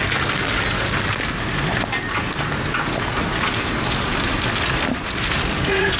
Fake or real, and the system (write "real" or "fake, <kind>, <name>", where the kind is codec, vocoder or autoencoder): real